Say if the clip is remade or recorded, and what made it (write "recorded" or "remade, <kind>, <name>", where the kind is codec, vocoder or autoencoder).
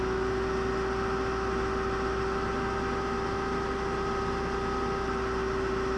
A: recorded